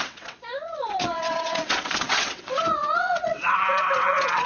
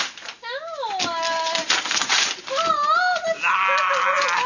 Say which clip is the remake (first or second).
first